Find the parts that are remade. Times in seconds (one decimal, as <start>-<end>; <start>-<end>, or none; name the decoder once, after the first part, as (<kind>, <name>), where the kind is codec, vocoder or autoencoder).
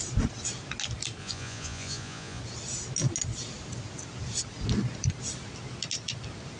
1.2-2.4 (vocoder, Vocos)